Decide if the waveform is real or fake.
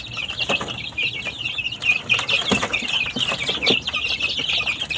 real